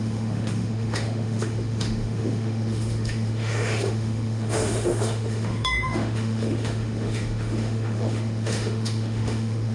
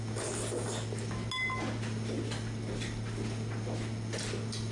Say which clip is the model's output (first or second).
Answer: first